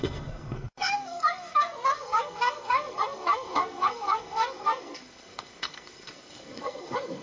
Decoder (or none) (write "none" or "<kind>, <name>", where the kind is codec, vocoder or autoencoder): codec, SNAC